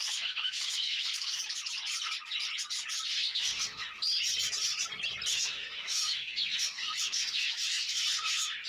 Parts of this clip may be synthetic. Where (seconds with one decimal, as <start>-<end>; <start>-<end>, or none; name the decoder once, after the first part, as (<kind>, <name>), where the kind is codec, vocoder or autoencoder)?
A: 0.0-1.4 (autoencoder, DAC-VAE); 3.1-4.0; 5.3-8.7